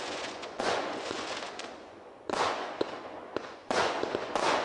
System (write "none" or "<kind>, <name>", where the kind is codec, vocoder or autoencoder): vocoder, Vocos